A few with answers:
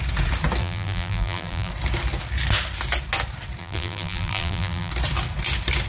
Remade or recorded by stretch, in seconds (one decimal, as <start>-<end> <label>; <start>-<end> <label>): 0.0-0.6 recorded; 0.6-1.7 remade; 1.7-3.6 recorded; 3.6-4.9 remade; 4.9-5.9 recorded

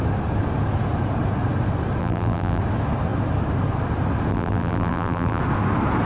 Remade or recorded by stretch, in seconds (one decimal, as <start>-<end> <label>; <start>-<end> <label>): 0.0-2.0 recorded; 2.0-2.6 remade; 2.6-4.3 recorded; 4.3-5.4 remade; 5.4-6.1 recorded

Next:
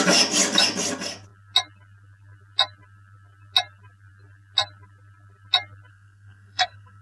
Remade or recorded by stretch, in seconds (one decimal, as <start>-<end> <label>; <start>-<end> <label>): 0.0-5.9 recorded; 5.9-7.0 remade